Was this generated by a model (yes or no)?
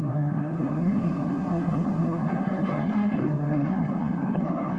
yes